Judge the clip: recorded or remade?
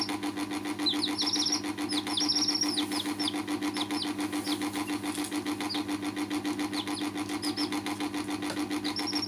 recorded